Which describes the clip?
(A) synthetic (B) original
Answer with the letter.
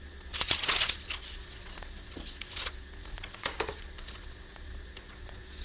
A